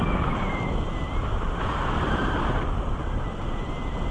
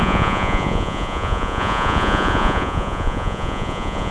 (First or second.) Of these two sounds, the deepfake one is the second